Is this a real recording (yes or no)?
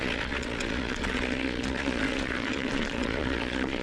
no